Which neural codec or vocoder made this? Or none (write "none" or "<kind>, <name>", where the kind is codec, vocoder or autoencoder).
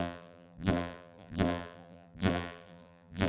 vocoder, BigVGAN v2